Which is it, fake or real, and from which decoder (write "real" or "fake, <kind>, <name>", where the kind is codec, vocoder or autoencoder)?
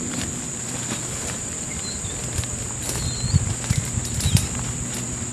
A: real